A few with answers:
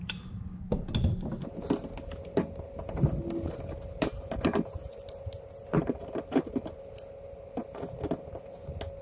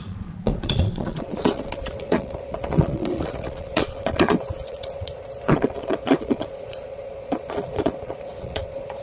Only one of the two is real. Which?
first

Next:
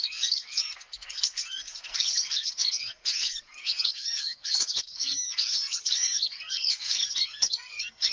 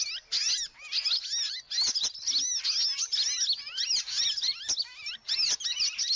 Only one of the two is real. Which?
second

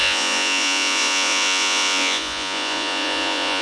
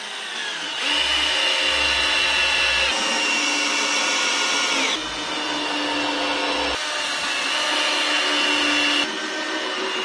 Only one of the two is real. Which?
second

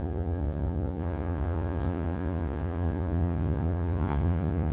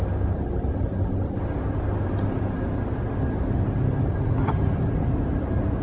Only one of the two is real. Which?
second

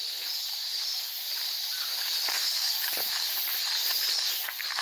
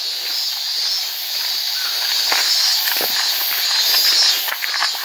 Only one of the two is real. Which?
second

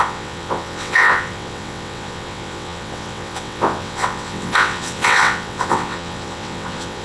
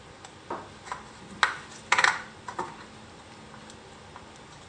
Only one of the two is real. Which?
second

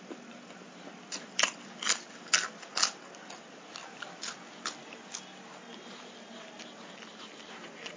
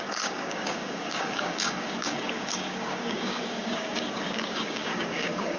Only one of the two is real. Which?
first